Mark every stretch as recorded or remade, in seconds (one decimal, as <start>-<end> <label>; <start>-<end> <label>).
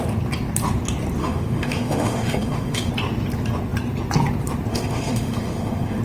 0.0-1.2 recorded; 1.2-2.9 remade; 2.9-4.7 recorded; 4.7-6.0 remade